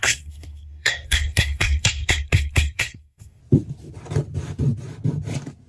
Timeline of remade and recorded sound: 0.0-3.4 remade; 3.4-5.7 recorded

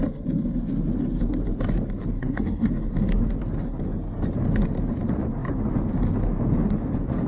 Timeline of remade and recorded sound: 0.0-2.2 recorded; 2.2-2.7 remade; 2.7-7.3 recorded

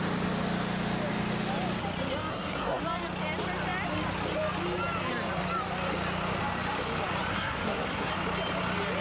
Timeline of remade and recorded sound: 0.0-2.3 recorded; 2.3-2.8 remade; 2.8-7.3 recorded; 7.3-8.1 remade; 8.1-9.0 recorded

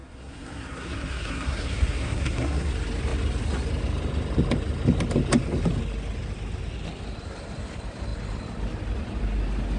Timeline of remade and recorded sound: 0.0-2.7 remade; 2.7-9.8 recorded

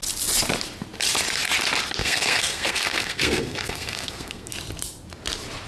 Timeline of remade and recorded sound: 0.0-2.0 recorded; 2.0-4.5 remade; 4.5-5.7 recorded

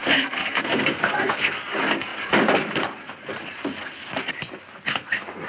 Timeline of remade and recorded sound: 0.0-1.6 remade; 1.6-4.9 recorded; 4.9-5.5 remade